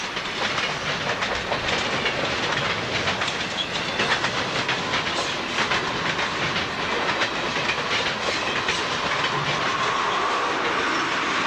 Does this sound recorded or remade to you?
recorded